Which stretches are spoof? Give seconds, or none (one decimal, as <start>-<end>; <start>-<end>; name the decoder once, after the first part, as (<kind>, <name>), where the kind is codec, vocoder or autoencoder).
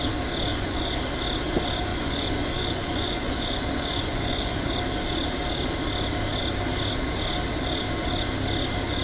0.5-1.0 (vocoder, Vocos); 1.9-4.7